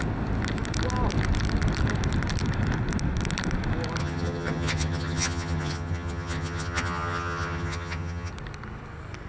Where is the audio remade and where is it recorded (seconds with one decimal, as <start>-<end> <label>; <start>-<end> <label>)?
0.0-4.0 recorded; 4.0-8.3 remade; 8.3-9.3 recorded